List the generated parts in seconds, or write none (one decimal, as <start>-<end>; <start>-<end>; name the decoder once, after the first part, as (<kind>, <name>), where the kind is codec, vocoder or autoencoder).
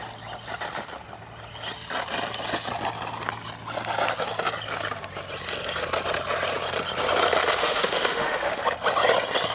7.6-8.6 (autoencoder, DAC-VAE)